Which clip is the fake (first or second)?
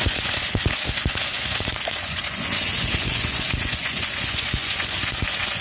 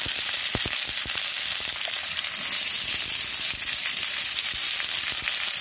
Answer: first